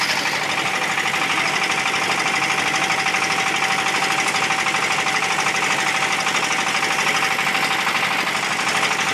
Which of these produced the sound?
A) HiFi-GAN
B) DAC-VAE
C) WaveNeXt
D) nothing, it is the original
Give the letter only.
D